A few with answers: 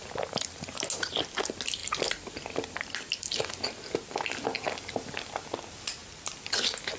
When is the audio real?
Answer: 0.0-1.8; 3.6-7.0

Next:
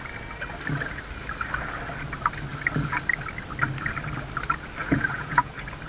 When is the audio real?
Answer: 0.0-4.8; 5.5-5.9

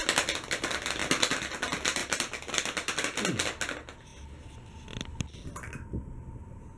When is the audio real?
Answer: 0.0-6.8

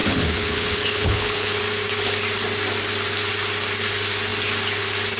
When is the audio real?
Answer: 1.6-5.2

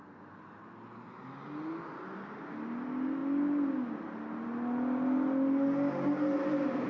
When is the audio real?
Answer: 0.0-6.9